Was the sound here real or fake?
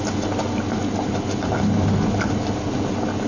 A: real